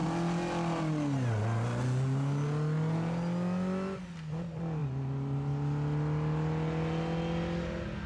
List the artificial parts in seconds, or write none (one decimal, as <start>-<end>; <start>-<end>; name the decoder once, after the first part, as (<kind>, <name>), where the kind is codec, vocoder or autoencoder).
none